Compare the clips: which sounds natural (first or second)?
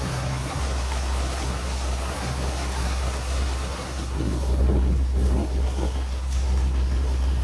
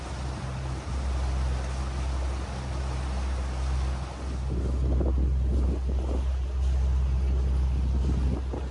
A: second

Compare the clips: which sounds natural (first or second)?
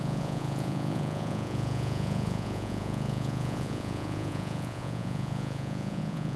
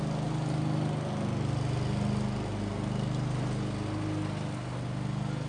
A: second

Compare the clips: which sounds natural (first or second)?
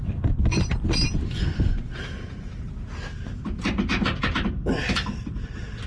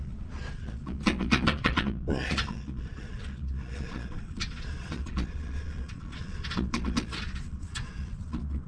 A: first